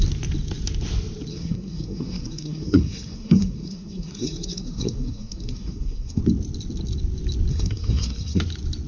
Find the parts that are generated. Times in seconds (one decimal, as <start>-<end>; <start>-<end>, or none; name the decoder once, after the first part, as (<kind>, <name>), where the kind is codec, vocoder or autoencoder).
1.3-6.2 (codec, SNAC); 7.5-8.4